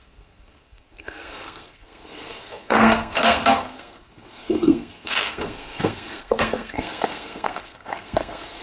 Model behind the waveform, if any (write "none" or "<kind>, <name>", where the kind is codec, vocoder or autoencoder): codec, SNAC